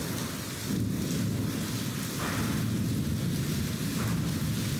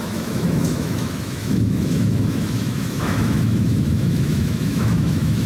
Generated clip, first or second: second